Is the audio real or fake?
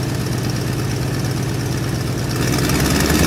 real